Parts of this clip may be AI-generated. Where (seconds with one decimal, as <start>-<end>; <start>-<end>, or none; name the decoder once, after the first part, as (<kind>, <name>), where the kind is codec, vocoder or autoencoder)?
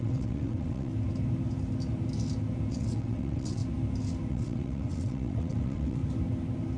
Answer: 0.0-0.9 (vocoder, WaveNeXt); 2.7-3.6; 4.3-6.0